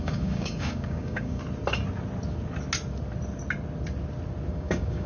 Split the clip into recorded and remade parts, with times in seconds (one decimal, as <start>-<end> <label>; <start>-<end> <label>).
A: 0.0-1.4 remade; 1.4-4.5 recorded; 4.5-5.1 remade